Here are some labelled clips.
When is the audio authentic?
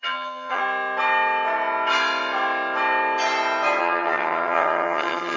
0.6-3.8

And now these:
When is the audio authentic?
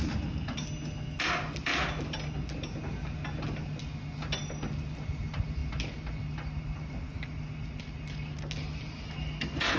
0.0-9.8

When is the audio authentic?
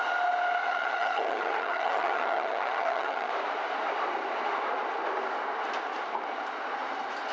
0.0-0.6; 3.3-7.3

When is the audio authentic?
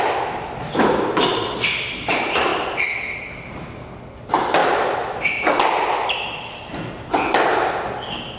0.0-8.4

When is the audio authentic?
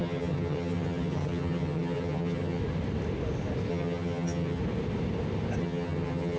2.6-3.7; 4.6-5.6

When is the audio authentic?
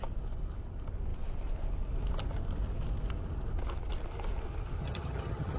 0.0-4.8